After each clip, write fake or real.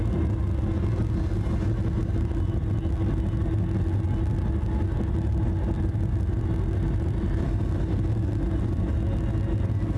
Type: real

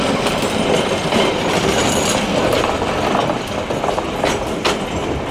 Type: fake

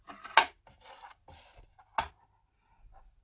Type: real